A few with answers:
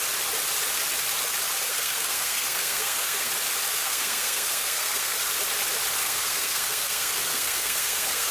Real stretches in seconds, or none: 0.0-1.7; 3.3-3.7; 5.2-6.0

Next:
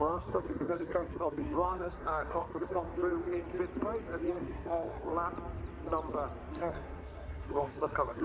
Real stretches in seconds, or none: 2.9-4.3; 5.1-6.5

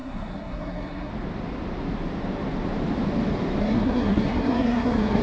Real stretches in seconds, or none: 1.1-3.6

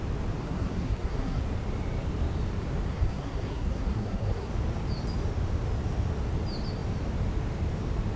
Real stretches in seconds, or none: 0.0-0.4; 1.4-2.9; 4.5-8.2

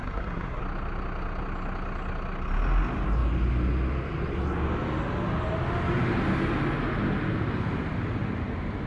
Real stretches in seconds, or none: 0.6-8.9